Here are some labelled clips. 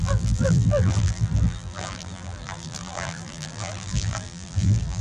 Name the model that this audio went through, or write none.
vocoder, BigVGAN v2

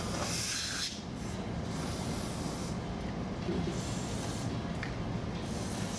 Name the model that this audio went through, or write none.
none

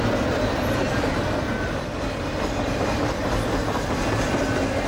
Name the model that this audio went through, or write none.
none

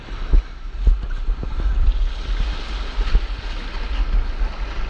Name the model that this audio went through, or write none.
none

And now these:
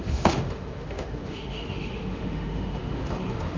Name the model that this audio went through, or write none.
autoencoder, DAC-VAE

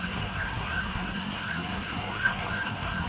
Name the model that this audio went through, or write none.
codec, SNAC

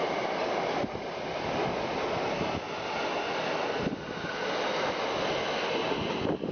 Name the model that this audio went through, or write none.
none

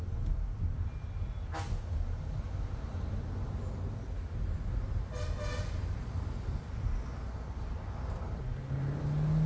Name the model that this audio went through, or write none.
none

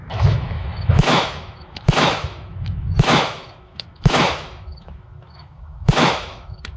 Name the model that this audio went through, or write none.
autoencoder, DAC-VAE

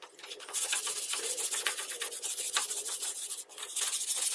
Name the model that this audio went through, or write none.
vocoder, Vocos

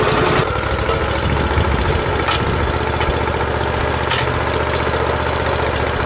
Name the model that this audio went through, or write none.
none